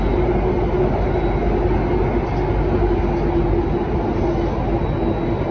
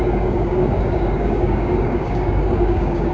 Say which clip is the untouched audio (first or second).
first